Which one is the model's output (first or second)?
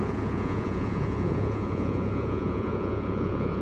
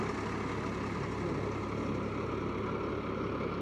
first